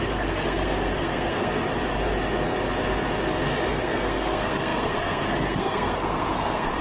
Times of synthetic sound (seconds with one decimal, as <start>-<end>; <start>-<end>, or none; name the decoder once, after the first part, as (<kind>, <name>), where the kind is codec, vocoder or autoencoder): 0.0-1.6 (codec, SNAC); 3.7-6.8